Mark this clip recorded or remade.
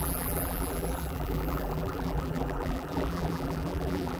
remade